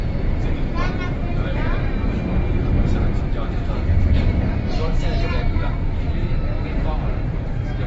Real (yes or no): no